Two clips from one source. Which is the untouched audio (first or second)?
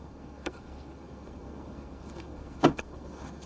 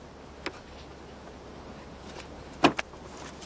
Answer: second